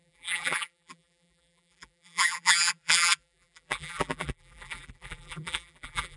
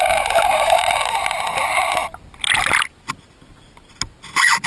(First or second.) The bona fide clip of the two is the second